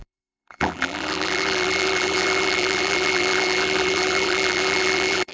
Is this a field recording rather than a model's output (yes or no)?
no